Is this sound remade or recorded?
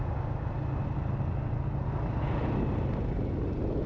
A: recorded